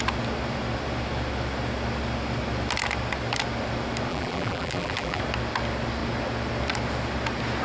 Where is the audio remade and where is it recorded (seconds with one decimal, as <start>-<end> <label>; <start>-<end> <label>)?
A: 0.0-4.1 recorded; 4.1-5.2 remade; 5.2-7.6 recorded